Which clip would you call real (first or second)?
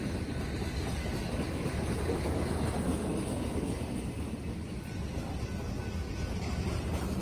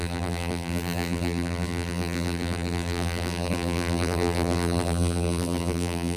first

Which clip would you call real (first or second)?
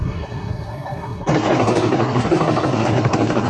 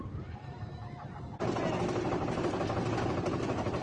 second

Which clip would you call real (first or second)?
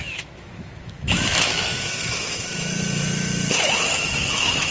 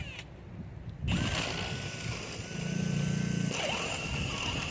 second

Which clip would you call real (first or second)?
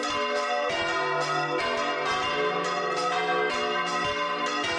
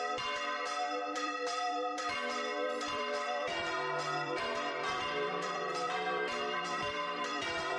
first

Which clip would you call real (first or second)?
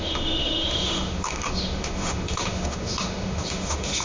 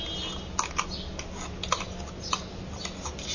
second